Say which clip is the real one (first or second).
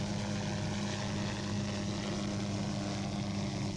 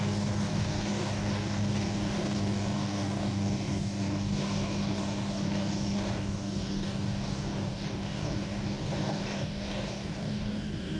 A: first